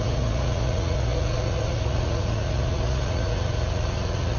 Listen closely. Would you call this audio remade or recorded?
remade